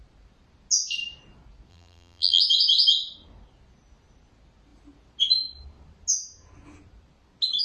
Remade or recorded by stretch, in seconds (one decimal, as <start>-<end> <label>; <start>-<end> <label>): 0.0-1.7 recorded; 1.7-2.4 remade; 2.4-7.6 recorded